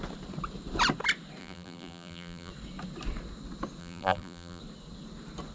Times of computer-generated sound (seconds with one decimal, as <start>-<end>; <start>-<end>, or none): 1.4-2.5; 3.8-4.6